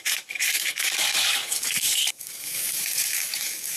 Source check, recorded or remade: remade